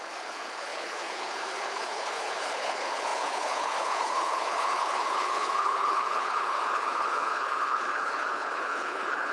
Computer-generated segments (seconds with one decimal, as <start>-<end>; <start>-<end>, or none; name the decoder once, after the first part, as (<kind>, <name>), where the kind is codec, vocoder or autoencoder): 0.0-9.3 (codec, HILCodec)